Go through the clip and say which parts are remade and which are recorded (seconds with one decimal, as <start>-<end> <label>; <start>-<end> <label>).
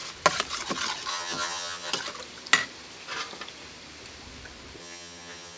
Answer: 0.0-1.1 recorded; 1.1-1.9 remade; 1.9-4.8 recorded; 4.8-5.6 remade